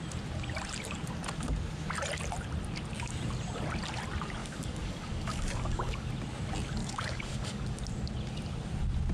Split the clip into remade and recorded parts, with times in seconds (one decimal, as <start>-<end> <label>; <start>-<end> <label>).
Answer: 0.0-4.4 recorded; 4.4-6.1 remade; 6.1-6.8 recorded; 6.8-7.8 remade; 7.8-9.1 recorded

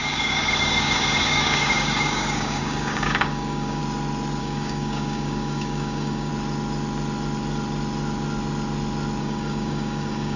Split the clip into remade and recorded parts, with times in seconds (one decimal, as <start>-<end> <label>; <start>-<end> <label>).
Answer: 0.0-3.8 remade; 3.8-4.4 recorded; 4.4-6.3 remade; 6.3-9.2 recorded; 9.2-10.4 remade

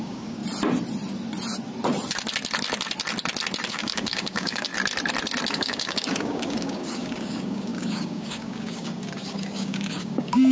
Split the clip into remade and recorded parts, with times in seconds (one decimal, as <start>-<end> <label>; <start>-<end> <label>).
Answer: 0.0-0.4 remade; 0.4-3.7 recorded; 3.7-4.7 remade; 4.7-5.5 recorded; 5.5-10.5 remade